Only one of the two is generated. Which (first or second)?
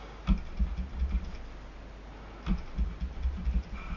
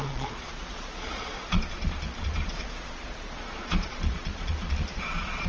second